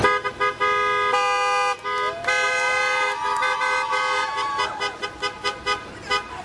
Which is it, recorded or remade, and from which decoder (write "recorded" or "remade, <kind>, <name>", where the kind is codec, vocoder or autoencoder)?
recorded